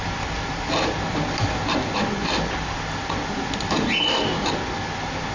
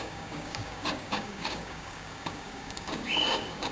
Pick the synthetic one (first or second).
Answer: second